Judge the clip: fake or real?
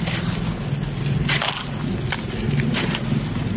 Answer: real